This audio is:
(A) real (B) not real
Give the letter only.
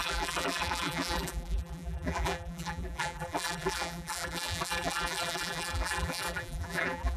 B